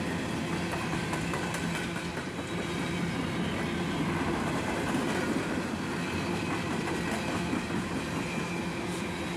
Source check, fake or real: real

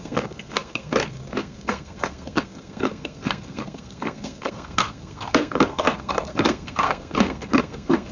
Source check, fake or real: fake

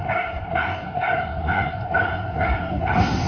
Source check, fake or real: fake